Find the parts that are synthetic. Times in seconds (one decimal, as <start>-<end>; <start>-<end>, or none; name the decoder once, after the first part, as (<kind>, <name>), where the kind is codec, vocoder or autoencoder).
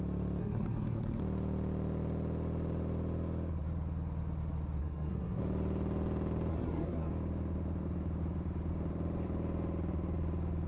0.4-1.2 (codec, SNAC); 4.8-5.4; 6.5-7.1